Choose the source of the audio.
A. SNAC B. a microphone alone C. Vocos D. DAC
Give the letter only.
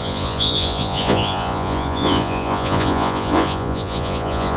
C